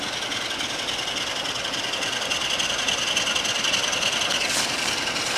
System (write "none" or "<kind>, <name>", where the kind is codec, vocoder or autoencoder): none